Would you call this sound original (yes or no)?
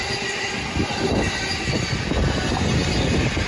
yes